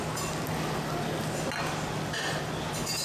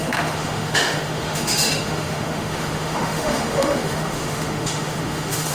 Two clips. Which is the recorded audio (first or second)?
first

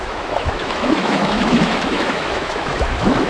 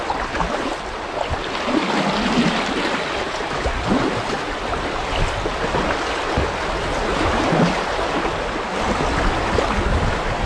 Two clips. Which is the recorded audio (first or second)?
second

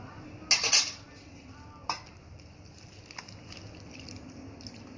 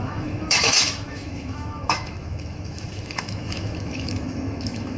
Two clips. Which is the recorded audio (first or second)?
first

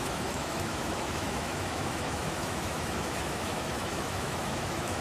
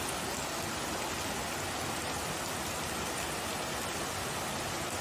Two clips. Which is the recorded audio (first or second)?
second